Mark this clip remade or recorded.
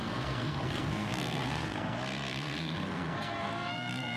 remade